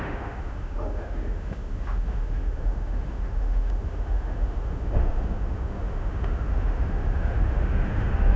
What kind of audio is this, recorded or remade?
remade